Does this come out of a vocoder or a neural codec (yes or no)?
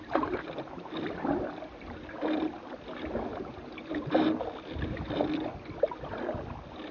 no